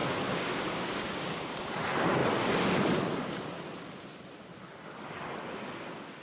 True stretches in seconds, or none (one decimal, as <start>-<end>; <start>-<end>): 1.7-6.2